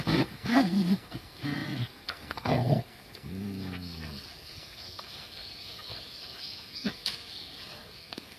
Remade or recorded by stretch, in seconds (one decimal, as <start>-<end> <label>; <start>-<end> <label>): 0.0-8.4 remade

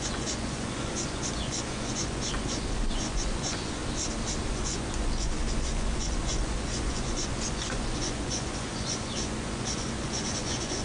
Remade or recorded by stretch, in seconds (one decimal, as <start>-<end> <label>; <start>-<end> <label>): 0.0-3.8 remade; 3.8-4.5 recorded; 4.5-10.8 remade

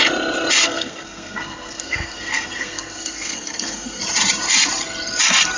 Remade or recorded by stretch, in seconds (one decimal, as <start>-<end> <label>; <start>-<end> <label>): 0.0-0.6 recorded; 0.6-4.0 remade; 4.0-5.6 recorded

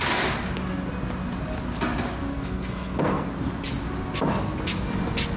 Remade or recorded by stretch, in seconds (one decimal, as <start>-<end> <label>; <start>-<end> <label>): 0.0-2.3 recorded; 2.3-3.3 remade; 3.3-5.4 recorded